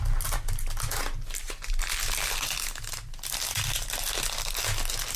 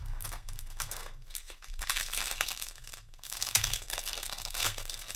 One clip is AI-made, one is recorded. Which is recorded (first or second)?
first